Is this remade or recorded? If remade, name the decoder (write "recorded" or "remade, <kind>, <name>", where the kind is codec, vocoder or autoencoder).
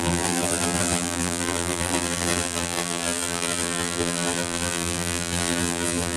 remade, vocoder, BigVGAN v2